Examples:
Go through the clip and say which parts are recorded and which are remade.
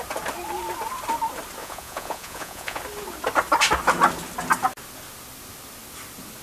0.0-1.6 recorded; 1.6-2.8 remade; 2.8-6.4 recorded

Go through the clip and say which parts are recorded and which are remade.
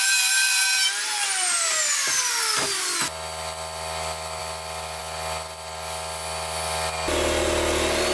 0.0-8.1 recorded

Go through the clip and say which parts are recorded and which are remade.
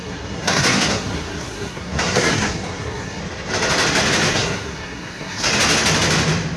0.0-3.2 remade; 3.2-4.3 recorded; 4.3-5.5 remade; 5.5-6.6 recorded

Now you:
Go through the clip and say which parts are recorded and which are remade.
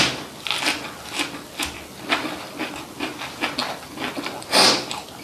0.0-5.2 recorded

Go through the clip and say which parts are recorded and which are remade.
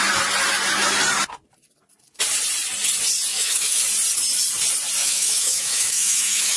0.0-3.3 recorded; 3.3-3.8 remade; 3.8-5.0 recorded; 5.0-6.6 remade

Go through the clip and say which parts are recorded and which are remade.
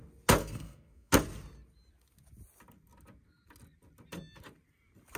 0.0-0.4 recorded; 0.4-1.1 remade; 1.1-5.2 recorded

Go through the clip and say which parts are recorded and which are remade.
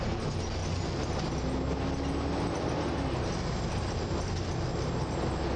0.0-5.6 recorded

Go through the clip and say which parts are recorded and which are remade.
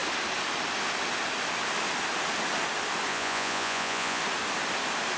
0.0-3.1 recorded; 3.1-4.2 remade; 4.2-5.2 recorded